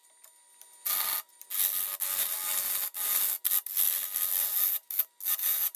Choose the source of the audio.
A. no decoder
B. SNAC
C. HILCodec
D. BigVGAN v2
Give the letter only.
A